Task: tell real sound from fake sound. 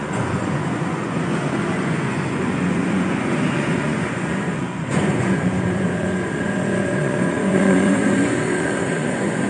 fake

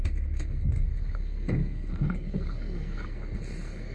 fake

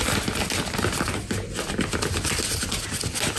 real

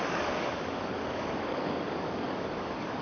fake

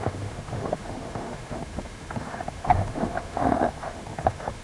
fake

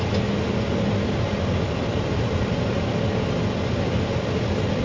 real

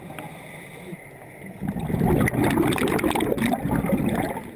real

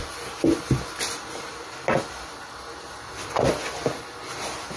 real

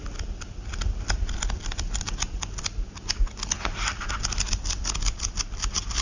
real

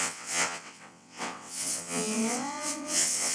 fake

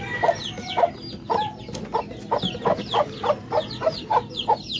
real